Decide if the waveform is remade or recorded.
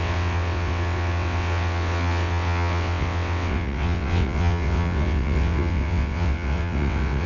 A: remade